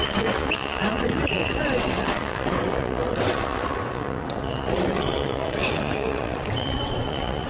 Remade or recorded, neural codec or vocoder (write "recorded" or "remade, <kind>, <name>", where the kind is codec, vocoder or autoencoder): remade, vocoder, WaveNeXt